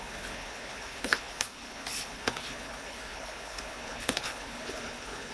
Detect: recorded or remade remade